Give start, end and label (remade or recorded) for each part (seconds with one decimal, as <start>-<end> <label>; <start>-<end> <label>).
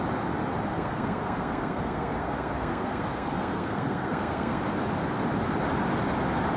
0.0-0.7 recorded; 0.7-4.6 remade; 4.6-6.6 recorded